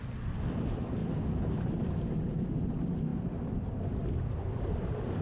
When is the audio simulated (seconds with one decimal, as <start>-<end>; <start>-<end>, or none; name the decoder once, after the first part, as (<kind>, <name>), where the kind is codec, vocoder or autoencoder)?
3.1-4.4 (vocoder, BigVGAN v2)